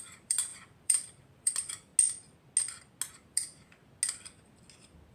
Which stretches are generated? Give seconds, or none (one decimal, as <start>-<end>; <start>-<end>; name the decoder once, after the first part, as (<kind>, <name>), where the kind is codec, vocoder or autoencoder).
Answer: 0.0-1.9 (vocoder, BigVGAN v2); 3.1-3.8

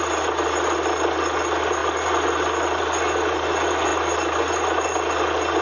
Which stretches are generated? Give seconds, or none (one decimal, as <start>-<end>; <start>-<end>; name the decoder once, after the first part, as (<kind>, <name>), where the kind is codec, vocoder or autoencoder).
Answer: none

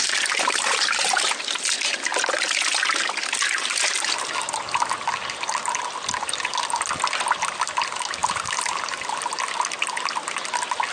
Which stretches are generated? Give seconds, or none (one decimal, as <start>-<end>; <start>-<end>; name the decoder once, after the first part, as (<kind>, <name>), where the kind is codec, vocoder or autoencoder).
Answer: 0.0-1.4 (vocoder, BigVGAN v2); 8.2-9.1

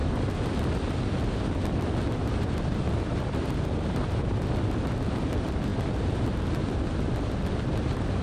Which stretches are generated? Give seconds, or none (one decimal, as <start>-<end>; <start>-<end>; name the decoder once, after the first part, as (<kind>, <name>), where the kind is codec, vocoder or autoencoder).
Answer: 2.2-4.5 (vocoder, BigVGAN v2)

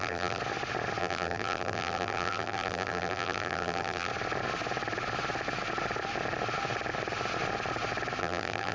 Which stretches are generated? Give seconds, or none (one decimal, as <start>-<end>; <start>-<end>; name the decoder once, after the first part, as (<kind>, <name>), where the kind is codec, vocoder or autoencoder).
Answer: 0.0-0.4 (vocoder, BigVGAN v2); 1.0-4.1; 8.2-8.7

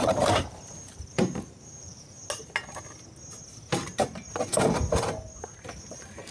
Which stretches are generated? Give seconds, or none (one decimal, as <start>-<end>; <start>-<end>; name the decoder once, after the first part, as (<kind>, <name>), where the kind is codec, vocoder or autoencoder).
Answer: 0.0-2.2 (vocoder, BigVGAN v2); 5.6-6.3

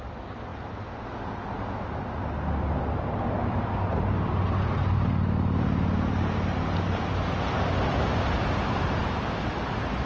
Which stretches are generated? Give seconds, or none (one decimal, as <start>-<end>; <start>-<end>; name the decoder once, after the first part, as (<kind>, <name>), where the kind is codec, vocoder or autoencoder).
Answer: none